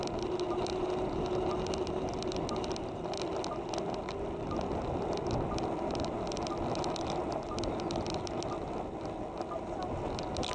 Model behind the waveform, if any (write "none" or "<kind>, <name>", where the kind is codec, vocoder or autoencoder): none